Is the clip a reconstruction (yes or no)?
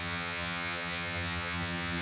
yes